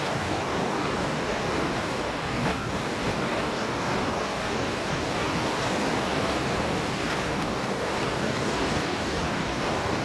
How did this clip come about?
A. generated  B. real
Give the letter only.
A